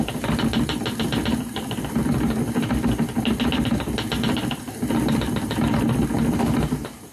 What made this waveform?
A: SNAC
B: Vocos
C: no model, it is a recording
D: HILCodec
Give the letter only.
C